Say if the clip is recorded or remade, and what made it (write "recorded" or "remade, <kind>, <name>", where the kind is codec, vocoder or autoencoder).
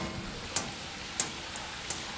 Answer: recorded